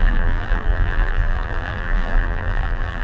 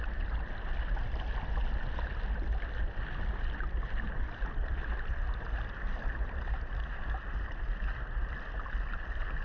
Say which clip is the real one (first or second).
second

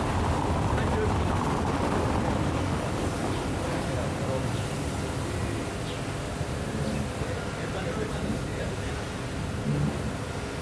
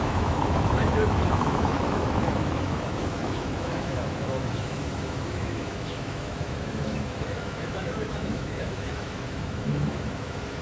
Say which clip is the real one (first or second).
first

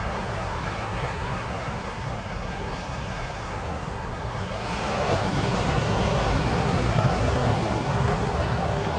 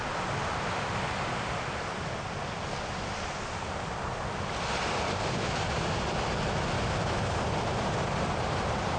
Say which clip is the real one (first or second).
second